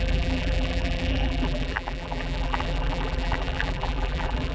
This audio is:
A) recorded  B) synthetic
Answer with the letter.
B